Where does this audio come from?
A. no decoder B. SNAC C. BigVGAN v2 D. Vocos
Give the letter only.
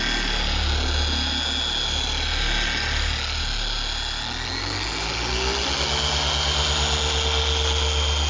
A